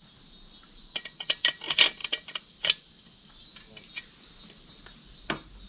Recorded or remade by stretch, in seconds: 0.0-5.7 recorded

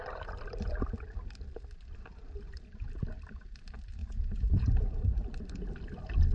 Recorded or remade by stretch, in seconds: 0.0-4.0 recorded; 4.0-5.0 remade; 5.0-6.3 recorded

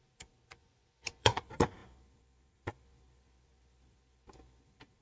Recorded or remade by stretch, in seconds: 0.0-0.6 recorded; 0.6-1.4 remade; 1.4-5.0 recorded